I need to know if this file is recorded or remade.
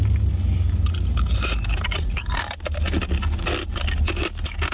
recorded